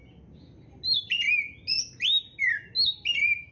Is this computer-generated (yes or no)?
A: no